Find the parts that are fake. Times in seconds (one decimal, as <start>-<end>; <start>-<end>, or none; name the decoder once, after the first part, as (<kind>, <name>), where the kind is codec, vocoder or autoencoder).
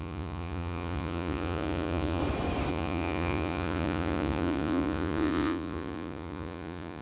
0.0-2.2 (vocoder, Vocos); 2.7-7.0